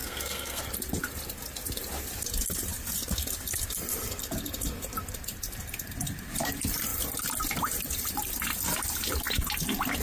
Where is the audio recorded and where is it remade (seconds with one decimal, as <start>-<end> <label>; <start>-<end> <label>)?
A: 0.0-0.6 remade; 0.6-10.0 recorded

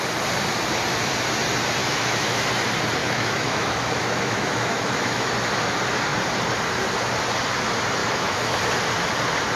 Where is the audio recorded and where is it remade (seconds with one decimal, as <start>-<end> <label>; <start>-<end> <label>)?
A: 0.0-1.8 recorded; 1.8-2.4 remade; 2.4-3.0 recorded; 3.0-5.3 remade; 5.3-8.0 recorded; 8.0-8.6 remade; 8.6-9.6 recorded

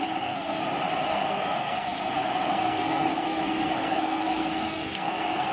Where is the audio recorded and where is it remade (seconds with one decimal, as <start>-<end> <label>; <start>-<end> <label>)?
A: 0.0-0.6 remade; 0.6-1.1 recorded; 1.1-5.5 remade

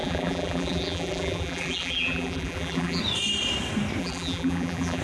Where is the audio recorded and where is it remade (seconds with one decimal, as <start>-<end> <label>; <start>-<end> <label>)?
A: 0.0-3.0 remade; 3.0-4.0 recorded; 4.0-5.0 remade

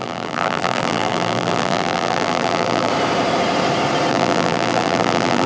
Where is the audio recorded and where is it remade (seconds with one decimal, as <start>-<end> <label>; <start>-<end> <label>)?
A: 0.0-2.9 remade; 2.9-4.1 recorded; 4.1-5.5 remade

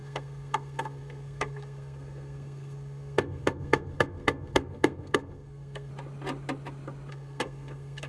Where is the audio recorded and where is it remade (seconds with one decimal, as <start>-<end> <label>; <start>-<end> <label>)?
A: 0.0-5.9 remade; 5.9-7.1 recorded; 7.1-8.1 remade